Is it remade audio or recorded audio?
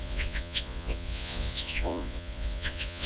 remade